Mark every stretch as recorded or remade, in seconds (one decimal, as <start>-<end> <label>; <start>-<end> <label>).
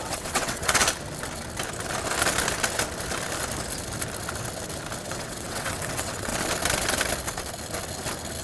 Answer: 0.0-0.8 remade; 0.8-5.0 recorded; 5.0-6.3 remade; 6.3-8.4 recorded